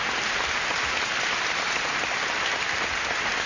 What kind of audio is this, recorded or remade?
recorded